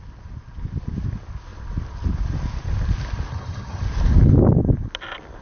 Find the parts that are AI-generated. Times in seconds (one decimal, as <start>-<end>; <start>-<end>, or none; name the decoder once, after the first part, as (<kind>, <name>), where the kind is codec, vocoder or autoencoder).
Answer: 3.3-3.8 (vocoder, HiFi-GAN)